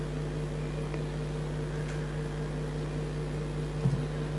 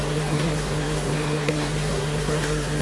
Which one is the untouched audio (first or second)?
first